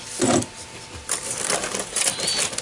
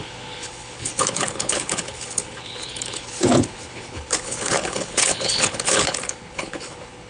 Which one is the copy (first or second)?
second